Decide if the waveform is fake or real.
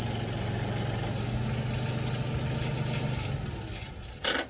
real